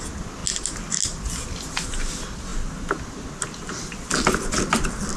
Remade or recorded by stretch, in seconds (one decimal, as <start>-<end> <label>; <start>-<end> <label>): 0.0-5.2 recorded